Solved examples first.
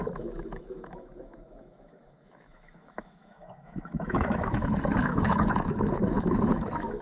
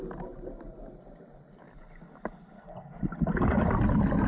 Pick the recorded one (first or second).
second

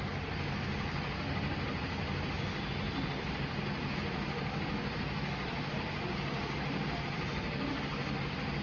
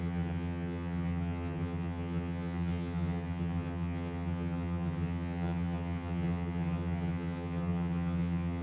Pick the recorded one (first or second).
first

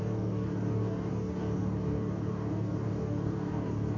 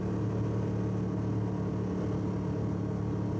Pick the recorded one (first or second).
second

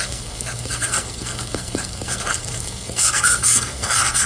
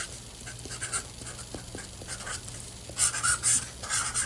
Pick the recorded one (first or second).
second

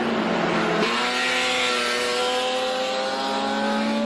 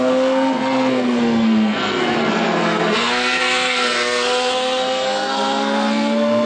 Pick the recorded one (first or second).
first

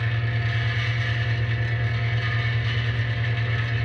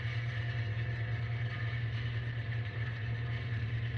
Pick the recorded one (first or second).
first